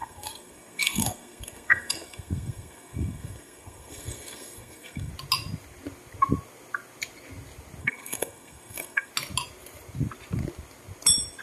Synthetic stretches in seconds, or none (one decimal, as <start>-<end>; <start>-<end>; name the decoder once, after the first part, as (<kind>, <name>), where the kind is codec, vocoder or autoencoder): 0.0-5.1 (codec, SNAC); 7.8-9.1